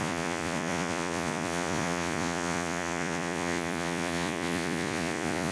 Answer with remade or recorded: remade